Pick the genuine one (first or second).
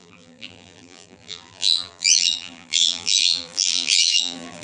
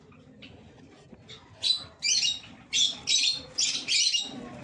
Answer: second